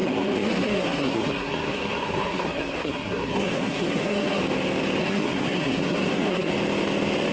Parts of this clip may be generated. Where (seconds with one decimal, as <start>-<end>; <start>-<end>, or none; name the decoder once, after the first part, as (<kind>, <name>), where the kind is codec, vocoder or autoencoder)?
0.0-4.4 (codec, SNAC); 5.0-6.5